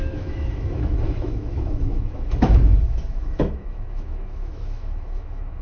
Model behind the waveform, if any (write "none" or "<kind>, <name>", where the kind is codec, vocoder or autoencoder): autoencoder, DAC-VAE